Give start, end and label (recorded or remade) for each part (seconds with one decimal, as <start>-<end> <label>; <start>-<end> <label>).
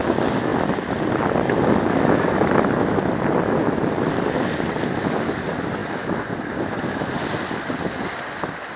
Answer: 0.0-8.8 recorded